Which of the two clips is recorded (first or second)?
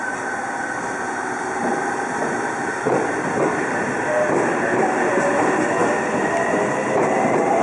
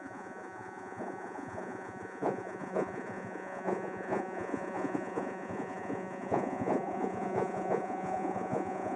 first